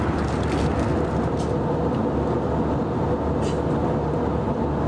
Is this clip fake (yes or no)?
no